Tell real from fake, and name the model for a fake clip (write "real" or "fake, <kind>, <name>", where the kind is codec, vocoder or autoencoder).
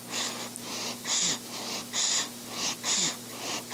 real